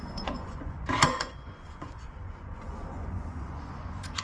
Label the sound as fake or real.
fake